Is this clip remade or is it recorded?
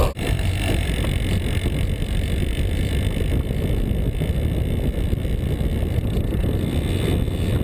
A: recorded